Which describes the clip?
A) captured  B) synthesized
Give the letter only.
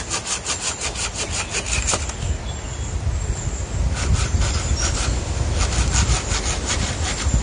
A